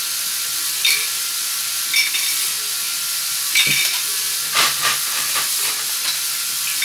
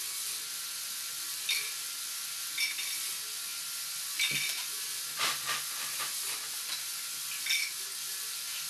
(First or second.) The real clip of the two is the second